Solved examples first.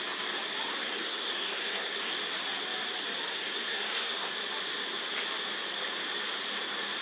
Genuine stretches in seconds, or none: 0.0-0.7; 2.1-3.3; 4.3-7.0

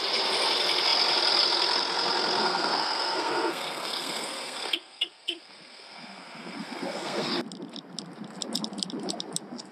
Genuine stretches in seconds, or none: 0.0-2.4; 7.3-9.7

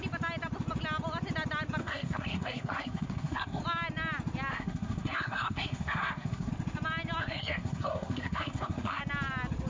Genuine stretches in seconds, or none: 0.0-1.8; 3.6-4.5; 6.5-7.2; 9.0-9.7

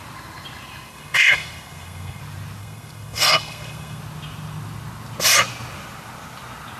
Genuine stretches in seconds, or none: 0.0-0.9; 2.2-2.6; 4.0-6.8

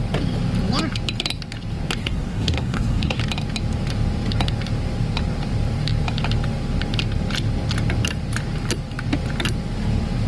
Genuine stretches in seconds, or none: 0.0-2.0; 3.2-10.3

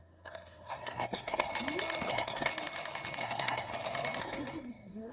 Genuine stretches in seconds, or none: 1.5-2.1; 2.5-3.2; 3.7-4.2

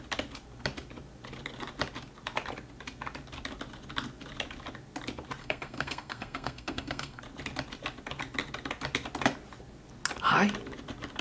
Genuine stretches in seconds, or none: 0.0-5.4; 7.2-11.2